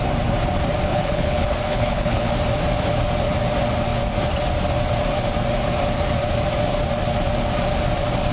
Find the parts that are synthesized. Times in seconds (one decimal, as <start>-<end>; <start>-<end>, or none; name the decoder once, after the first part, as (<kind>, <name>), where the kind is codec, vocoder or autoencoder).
0.9-2.3 (codec, HILCodec)